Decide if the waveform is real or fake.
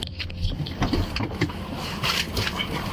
real